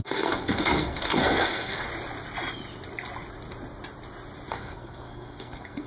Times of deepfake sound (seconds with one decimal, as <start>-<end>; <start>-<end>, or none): 0.0-1.9; 4.5-5.9